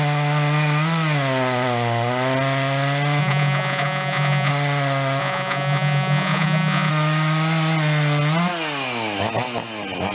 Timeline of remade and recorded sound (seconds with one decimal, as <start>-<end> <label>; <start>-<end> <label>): 0.0-3.2 recorded; 3.2-4.5 remade; 4.5-5.2 recorded; 5.2-6.9 remade; 6.9-10.1 recorded